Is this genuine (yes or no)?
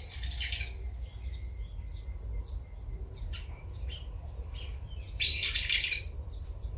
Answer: yes